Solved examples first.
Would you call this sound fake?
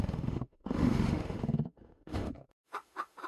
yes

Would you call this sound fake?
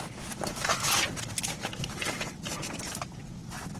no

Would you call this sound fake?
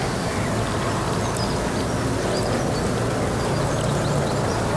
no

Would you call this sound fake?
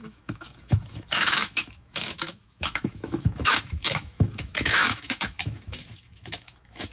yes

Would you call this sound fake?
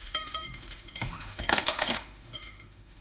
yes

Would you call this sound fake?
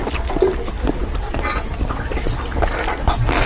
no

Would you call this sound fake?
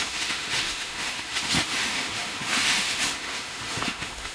yes